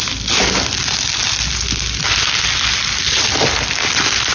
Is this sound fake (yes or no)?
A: no